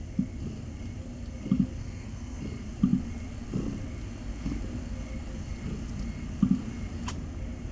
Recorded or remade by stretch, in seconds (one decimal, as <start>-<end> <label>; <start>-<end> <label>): 0.0-1.8 recorded; 1.8-2.4 remade; 2.4-7.7 recorded